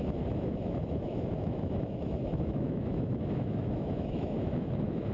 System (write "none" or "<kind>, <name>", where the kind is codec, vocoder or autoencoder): autoencoder, DAC-VAE